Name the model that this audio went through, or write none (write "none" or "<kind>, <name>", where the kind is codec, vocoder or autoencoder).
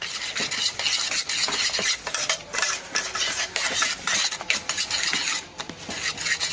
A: none